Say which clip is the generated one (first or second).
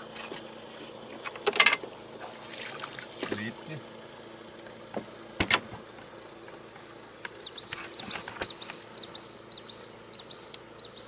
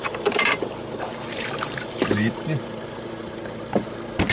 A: second